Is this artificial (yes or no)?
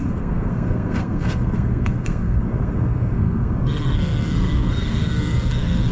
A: yes